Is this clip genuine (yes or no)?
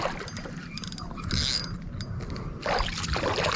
yes